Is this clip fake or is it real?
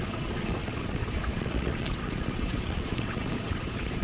fake